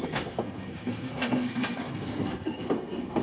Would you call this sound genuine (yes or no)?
no